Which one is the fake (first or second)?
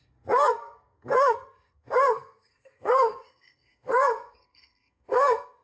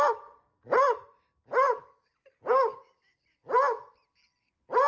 first